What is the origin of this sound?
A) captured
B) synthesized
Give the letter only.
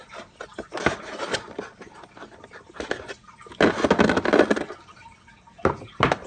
A